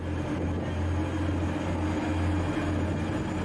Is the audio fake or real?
real